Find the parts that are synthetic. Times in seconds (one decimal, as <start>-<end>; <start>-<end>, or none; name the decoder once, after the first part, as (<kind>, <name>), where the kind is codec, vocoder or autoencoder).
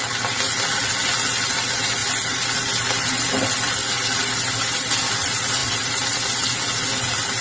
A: none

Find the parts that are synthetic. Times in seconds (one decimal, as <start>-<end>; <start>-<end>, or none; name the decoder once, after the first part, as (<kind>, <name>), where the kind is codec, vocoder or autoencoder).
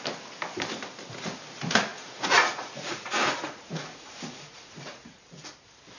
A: 1.9-5.5 (vocoder, Vocos)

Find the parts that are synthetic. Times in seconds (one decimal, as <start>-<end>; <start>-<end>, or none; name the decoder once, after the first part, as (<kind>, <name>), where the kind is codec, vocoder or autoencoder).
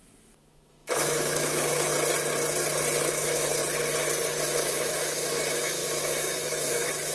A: 0.0-1.9 (autoencoder, DAC-VAE); 3.0-3.6; 4.4-7.1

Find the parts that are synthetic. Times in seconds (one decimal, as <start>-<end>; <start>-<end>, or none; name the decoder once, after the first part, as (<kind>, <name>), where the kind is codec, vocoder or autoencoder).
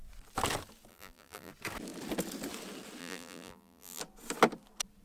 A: 0.9-1.5 (vocoder, BigVGAN v2); 3.0-4.0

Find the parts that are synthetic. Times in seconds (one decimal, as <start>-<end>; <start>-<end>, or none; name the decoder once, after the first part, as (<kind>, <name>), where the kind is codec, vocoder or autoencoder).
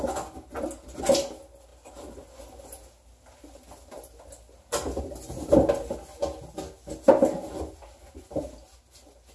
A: none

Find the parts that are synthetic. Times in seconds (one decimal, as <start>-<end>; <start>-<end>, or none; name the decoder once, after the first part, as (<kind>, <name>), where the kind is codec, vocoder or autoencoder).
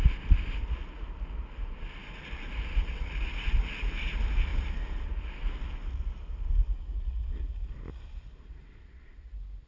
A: none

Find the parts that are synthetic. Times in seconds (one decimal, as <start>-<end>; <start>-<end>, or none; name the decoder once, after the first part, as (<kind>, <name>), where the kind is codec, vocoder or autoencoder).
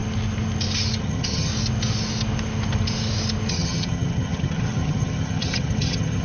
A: 1.0-1.5 (vocoder, HiFi-GAN); 3.5-6.2